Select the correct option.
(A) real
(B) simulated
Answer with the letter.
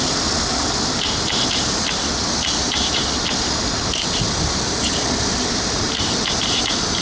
A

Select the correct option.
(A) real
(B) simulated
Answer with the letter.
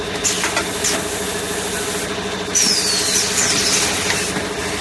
A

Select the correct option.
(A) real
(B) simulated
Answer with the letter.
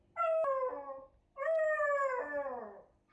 A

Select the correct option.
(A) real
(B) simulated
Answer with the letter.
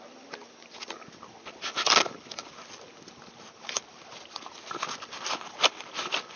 A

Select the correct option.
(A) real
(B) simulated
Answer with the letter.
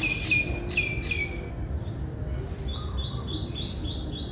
A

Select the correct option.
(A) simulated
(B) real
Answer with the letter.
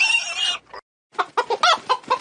B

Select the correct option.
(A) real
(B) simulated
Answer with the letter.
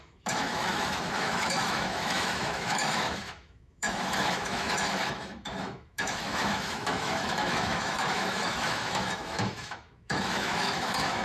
B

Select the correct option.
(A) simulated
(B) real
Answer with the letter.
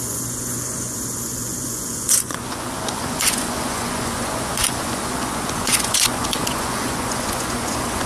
A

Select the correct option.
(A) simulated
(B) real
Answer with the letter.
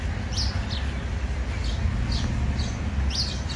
B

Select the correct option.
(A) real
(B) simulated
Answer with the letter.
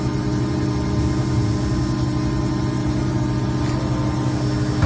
A